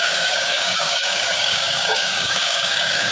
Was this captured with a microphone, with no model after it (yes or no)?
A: no